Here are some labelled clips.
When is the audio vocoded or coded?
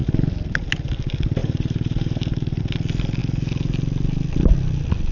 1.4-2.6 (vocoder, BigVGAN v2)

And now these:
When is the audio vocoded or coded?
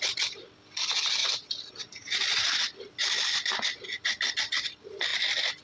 0.0-1.2 (vocoder, BigVGAN v2); 2.9-5.6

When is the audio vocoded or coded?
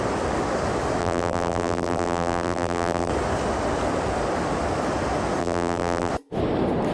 1.0-3.1 (vocoder, BigVGAN v2); 5.4-6.1